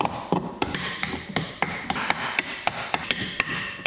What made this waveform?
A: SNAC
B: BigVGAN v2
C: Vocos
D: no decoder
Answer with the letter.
B